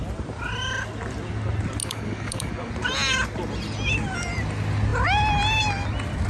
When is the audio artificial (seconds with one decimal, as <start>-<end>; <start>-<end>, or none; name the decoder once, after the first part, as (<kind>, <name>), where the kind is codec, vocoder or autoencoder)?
1.8-2.7 (codec, DAC)